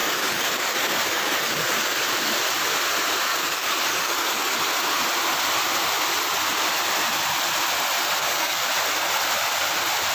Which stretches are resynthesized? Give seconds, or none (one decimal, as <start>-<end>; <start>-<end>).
0.0-2.1; 3.3-4.6; 8.2-8.7